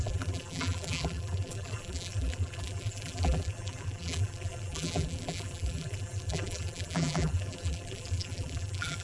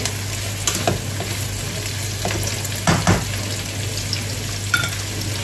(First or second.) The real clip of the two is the second